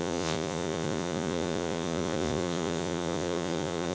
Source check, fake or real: fake